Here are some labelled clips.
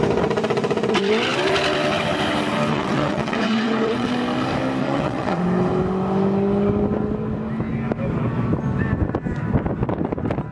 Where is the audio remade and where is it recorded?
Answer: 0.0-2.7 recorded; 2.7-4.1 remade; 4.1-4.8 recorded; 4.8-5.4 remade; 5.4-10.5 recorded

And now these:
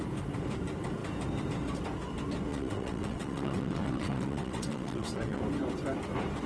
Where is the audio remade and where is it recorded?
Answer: 0.0-2.5 recorded; 2.5-5.4 remade; 5.4-6.5 recorded

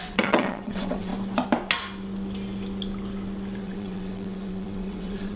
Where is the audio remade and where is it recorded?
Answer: 0.0-1.1 remade; 1.1-3.6 recorded; 3.6-5.4 remade

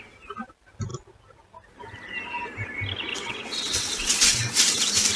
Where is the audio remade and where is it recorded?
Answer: 0.0-3.1 recorded; 3.1-4.8 remade; 4.8-5.2 recorded

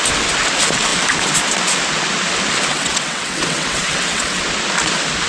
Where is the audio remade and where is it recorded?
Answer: 0.0-2.7 recorded; 2.7-4.4 remade; 4.4-5.3 recorded